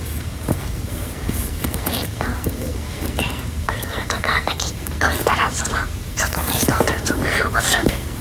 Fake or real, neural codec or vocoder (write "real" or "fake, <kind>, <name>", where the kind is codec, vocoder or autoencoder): fake, codec, SNAC